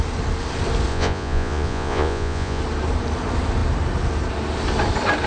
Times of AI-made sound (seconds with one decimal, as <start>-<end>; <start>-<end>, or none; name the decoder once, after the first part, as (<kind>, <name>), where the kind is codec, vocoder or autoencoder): 0.9-2.6 (vocoder, Vocos)